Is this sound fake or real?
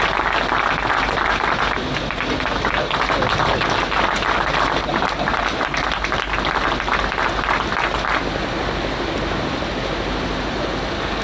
real